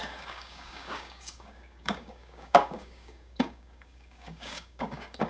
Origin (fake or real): fake